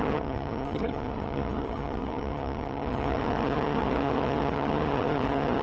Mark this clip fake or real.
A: fake